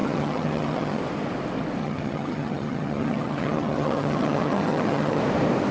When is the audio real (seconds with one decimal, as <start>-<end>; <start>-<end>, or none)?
1.0-1.8; 5.2-5.7